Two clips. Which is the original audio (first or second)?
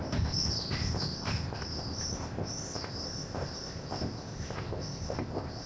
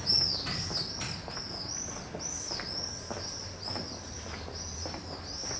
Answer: second